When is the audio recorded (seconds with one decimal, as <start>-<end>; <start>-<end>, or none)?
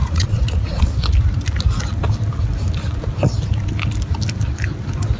0.8-5.2